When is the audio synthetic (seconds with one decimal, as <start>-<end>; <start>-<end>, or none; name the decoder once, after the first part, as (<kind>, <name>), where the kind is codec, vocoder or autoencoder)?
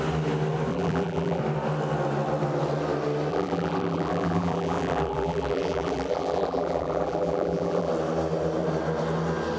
0.7-1.4 (vocoder, BigVGAN v2); 3.3-7.9